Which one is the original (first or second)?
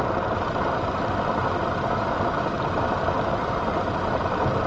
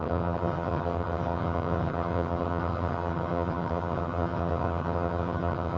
first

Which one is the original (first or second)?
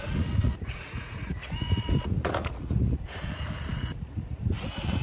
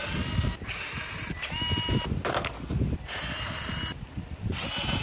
second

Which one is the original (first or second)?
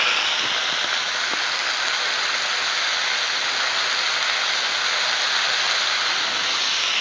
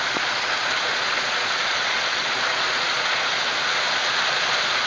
first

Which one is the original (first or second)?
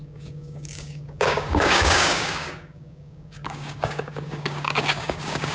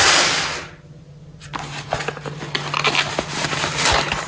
second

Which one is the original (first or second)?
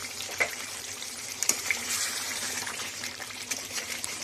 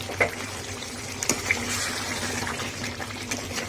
second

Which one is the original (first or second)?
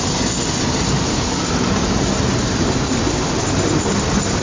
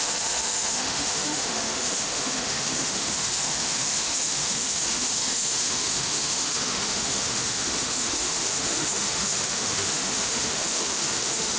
first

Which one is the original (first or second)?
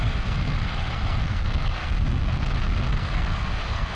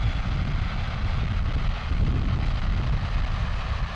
second